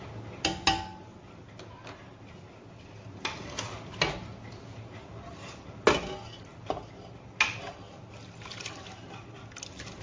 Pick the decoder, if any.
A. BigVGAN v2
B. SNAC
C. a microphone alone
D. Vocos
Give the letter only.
C